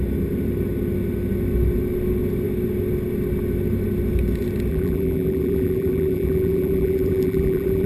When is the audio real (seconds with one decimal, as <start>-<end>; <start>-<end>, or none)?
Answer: 0.0-4.7